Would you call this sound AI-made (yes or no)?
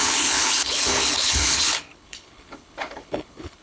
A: yes